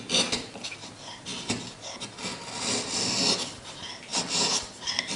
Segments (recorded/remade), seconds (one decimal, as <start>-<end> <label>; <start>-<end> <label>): 0.0-5.2 recorded